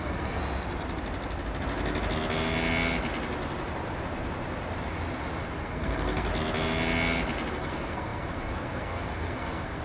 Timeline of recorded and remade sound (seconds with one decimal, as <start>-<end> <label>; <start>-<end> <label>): 0.0-0.4 remade; 0.4-5.6 recorded; 5.6-6.3 remade; 6.3-7.5 recorded; 7.5-9.8 remade